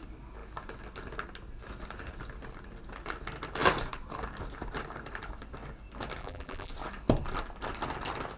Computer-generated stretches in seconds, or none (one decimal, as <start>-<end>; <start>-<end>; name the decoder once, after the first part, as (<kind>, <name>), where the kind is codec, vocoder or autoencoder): 6.2-6.7 (vocoder, BigVGAN v2)